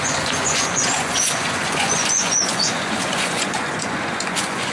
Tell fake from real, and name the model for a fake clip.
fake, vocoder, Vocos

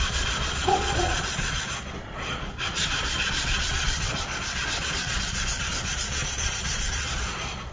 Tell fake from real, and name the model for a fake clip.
fake, vocoder, Vocos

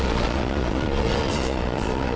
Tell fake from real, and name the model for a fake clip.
fake, vocoder, Vocos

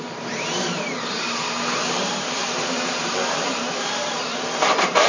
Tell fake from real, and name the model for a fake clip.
fake, vocoder, BigVGAN v2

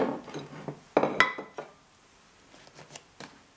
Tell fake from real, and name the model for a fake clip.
real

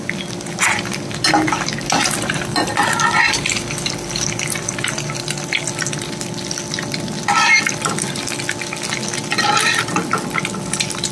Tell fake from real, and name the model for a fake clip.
real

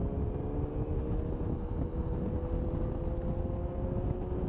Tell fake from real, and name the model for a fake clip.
real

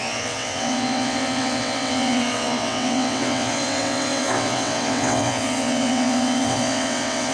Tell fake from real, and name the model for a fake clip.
fake, vocoder, WaveNeXt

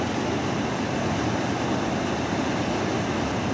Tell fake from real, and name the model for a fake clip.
real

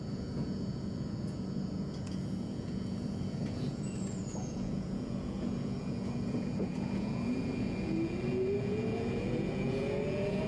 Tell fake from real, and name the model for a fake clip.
fake, vocoder, Vocos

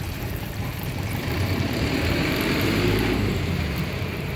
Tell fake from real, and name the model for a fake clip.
fake, vocoder, BigVGAN v2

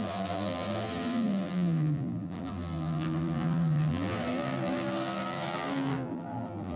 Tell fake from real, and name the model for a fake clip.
fake, vocoder, BigVGAN v2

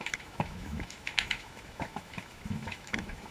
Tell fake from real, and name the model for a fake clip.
fake, autoencoder, DAC-VAE